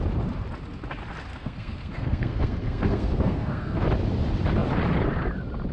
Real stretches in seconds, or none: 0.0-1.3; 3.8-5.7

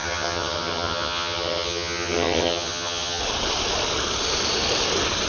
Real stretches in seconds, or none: 3.2-5.3

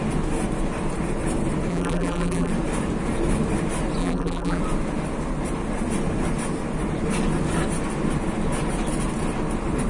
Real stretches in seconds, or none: 0.0-1.7; 2.5-4.0; 4.6-9.9

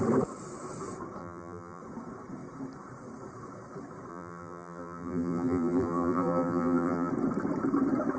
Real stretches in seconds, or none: 0.0-1.2; 1.8-4.1; 7.1-8.2

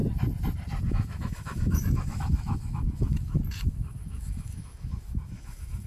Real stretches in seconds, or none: 0.0-0.9